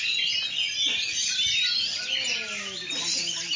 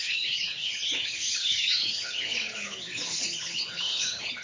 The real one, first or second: first